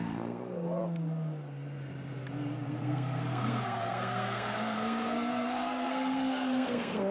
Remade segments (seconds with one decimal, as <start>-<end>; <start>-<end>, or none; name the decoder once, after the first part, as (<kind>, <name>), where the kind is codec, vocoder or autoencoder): 0.0-0.8 (codec, SNAC); 2.7-7.1